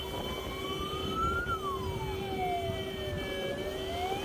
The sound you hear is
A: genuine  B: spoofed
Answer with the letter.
A